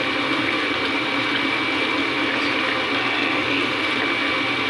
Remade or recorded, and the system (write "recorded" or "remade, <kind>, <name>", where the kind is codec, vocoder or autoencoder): recorded